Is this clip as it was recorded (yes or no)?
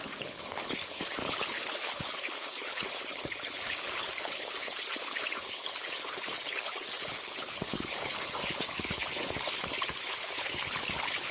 no